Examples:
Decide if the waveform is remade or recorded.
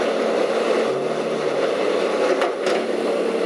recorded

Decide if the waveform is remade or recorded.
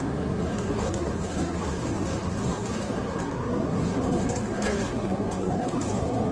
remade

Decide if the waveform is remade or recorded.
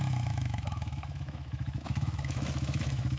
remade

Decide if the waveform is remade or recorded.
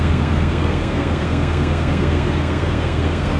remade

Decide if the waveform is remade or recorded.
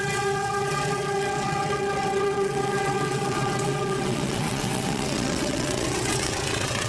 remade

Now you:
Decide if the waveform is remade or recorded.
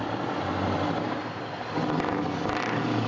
recorded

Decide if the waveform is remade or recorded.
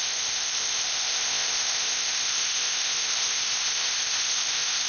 remade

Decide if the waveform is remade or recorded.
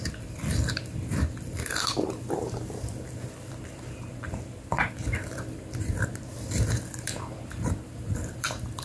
remade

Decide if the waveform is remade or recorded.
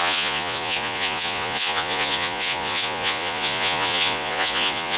remade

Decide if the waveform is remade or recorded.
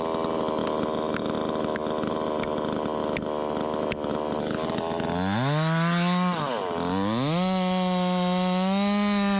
recorded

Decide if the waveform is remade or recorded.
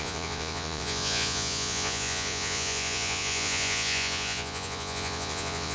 remade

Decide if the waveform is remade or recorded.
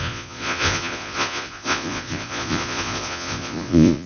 remade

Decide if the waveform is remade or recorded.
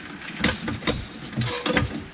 recorded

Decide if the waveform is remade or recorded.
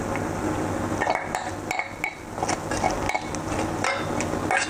recorded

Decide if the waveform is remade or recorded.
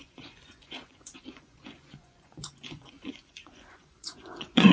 remade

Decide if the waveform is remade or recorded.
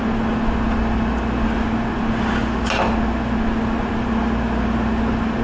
recorded